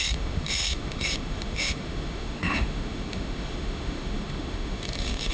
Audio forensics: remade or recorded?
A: remade